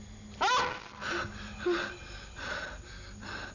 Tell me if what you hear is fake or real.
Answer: real